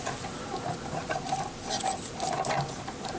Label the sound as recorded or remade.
recorded